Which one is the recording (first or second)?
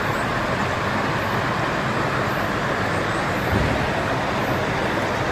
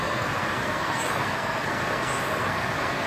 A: first